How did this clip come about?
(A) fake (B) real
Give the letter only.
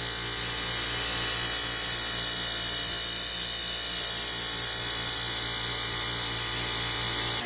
B